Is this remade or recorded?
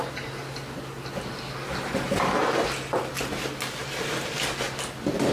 recorded